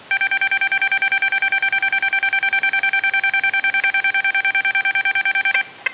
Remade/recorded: recorded